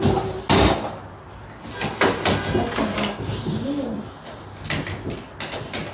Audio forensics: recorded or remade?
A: recorded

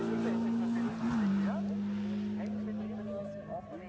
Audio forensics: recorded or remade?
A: recorded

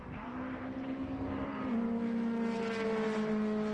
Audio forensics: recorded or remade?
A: recorded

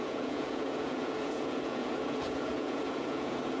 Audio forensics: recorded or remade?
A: remade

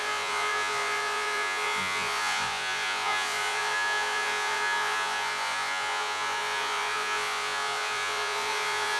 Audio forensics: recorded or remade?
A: remade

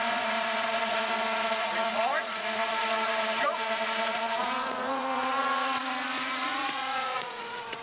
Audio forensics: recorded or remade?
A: remade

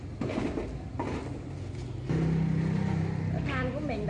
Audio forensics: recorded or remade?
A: recorded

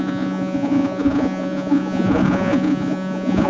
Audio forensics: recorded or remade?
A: remade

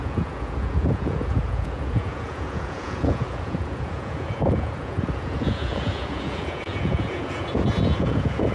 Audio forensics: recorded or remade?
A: remade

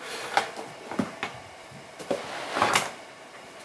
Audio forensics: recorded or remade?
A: recorded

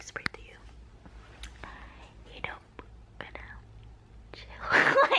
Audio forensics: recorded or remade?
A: recorded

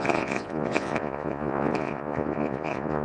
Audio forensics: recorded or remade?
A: remade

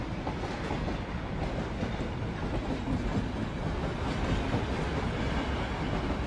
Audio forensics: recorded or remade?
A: recorded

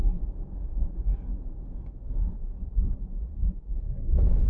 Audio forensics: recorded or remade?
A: remade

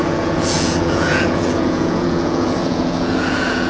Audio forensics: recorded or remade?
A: remade